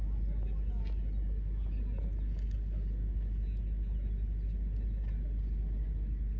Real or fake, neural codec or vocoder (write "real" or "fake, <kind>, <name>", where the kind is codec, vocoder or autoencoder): real